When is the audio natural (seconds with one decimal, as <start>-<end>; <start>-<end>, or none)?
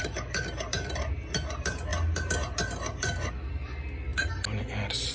0.0-5.1